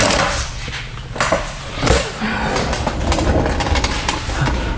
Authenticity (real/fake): real